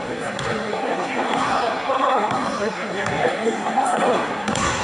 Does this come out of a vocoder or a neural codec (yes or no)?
yes